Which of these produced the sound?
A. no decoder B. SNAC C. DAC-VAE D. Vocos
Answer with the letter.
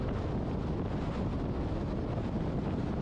A